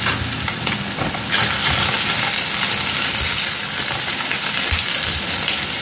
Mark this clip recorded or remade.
recorded